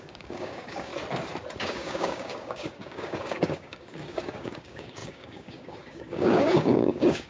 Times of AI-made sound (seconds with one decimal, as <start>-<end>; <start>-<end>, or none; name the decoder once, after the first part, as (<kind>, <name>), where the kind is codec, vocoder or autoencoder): 0.0-0.9 (codec, DAC); 1.6-7.3

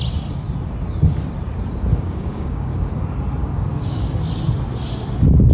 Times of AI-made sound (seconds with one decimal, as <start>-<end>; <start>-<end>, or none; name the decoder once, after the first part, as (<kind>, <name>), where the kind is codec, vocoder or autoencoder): 1.9-3.0 (codec, DAC); 3.4-4.1